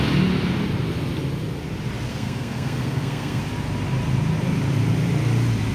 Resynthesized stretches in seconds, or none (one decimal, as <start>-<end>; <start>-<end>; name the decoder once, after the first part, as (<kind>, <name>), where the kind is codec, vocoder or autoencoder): 2.1-3.4 (codec, SNAC)